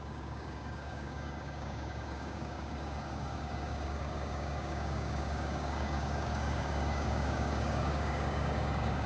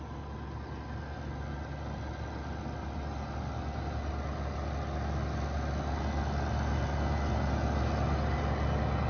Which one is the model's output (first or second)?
first